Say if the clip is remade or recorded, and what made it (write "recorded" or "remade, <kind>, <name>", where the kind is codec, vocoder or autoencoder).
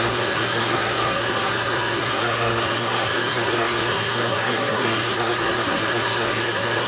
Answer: remade, codec, SNAC